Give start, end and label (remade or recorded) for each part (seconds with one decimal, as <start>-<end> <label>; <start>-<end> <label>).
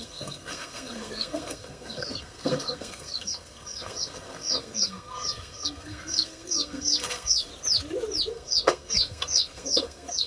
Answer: 0.0-7.5 remade; 7.5-8.3 recorded; 8.3-10.3 remade